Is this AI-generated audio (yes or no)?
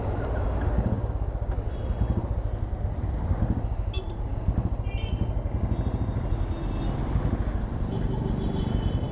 no